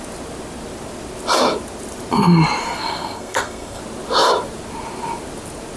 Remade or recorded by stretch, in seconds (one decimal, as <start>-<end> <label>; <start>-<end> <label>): 0.0-2.6 recorded; 2.6-3.8 remade; 3.8-5.8 recorded